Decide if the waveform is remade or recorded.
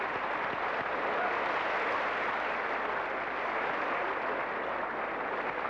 recorded